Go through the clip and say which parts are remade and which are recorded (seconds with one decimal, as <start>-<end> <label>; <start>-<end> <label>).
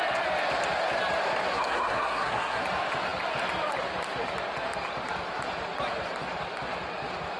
0.0-1.5 recorded; 1.5-2.6 remade; 2.6-7.4 recorded